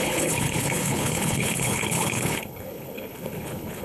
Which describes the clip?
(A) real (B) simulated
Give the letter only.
B